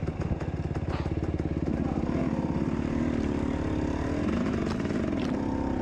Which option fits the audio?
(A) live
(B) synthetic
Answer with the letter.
A